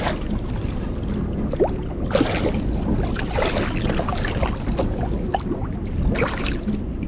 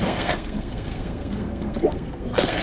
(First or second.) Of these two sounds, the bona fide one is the first